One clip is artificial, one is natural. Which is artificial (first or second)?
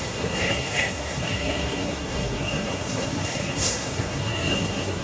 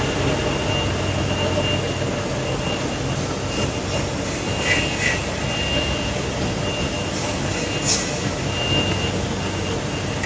first